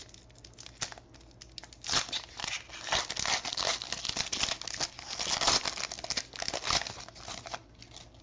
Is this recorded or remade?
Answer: recorded